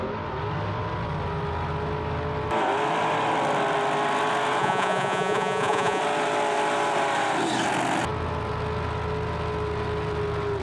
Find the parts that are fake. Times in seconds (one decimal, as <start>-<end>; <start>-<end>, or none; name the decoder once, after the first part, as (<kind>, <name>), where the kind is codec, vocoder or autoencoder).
4.6-6.0 (vocoder, Vocos)